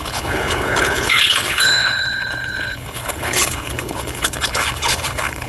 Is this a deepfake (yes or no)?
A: yes